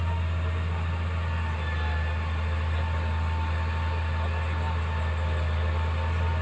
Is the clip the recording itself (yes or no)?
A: yes